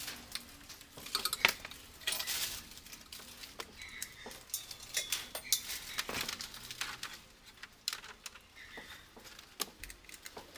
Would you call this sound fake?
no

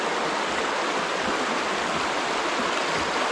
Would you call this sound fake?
no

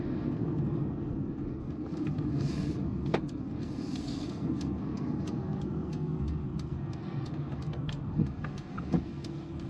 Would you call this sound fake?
yes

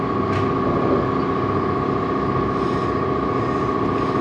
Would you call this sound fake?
no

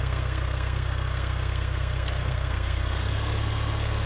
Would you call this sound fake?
yes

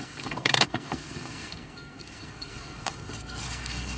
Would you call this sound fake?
yes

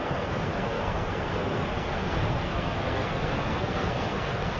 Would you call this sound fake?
yes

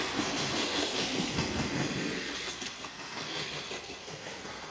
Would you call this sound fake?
yes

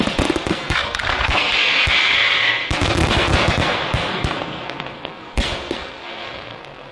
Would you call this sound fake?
yes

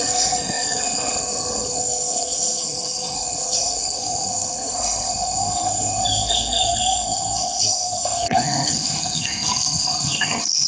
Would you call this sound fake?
yes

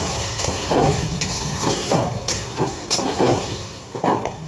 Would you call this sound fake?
yes